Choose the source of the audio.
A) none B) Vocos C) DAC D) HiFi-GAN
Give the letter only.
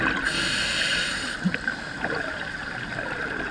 A